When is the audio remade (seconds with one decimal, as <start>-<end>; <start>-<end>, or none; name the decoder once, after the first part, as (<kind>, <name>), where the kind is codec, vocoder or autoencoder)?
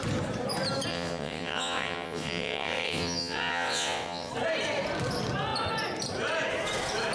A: 0.9-4.3 (vocoder, WaveNeXt)